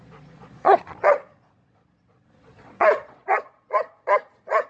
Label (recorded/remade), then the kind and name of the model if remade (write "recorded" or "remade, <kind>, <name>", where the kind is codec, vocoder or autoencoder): remade, vocoder, Vocos